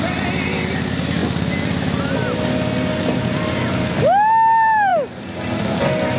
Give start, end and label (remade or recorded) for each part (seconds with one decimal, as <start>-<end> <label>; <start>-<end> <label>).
0.0-6.2 recorded